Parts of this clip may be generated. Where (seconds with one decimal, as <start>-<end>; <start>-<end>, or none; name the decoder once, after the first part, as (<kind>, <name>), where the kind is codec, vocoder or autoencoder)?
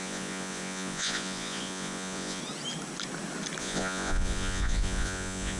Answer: 0.0-2.4 (vocoder, Vocos); 3.6-5.6